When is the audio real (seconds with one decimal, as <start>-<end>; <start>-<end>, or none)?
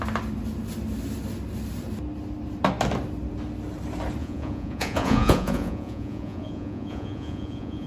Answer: 0.0-4.2